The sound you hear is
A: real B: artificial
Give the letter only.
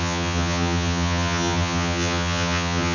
B